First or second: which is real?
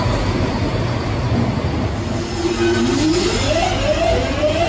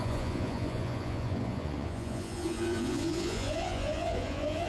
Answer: first